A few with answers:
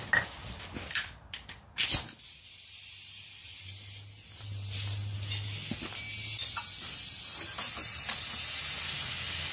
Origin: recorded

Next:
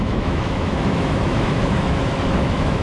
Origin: remade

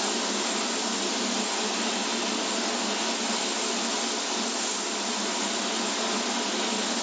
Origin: recorded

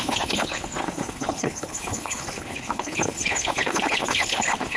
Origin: remade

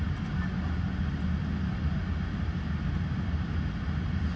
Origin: recorded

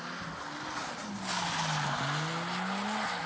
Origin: recorded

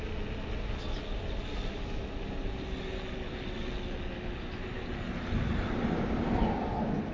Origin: recorded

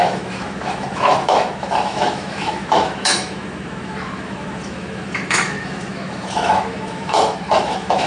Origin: remade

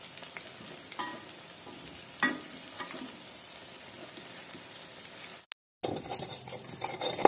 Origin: recorded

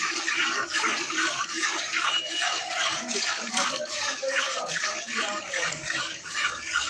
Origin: remade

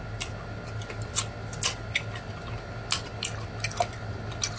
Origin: recorded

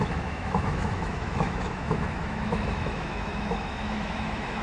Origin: remade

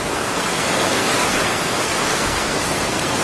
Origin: remade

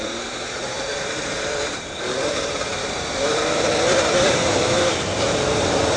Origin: remade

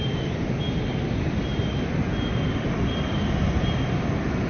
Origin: recorded